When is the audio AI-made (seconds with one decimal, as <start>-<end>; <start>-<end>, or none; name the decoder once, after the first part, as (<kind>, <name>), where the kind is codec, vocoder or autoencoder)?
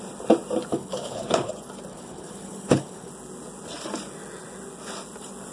0.7-1.5 (codec, HILCodec); 1.9-3.1